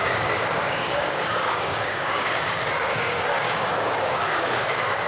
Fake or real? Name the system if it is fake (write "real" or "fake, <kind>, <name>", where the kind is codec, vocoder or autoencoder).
fake, codec, DAC